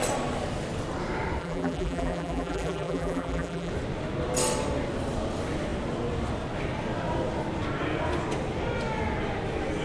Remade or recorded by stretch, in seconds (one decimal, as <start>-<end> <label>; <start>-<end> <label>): 0.0-1.4 recorded; 1.4-3.7 remade; 3.7-9.8 recorded